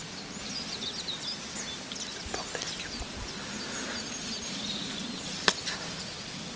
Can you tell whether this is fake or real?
real